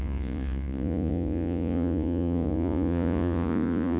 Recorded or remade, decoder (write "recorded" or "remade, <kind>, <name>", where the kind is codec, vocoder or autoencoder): remade, vocoder, Vocos